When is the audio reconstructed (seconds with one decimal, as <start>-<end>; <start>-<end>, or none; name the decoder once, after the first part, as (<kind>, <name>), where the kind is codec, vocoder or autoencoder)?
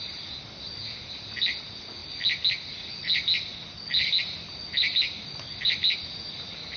none